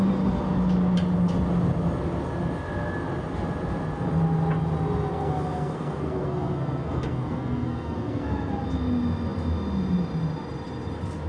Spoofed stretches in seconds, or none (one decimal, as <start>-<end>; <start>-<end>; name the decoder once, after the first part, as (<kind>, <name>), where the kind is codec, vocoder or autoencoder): 5.1-8.5 (codec, SNAC)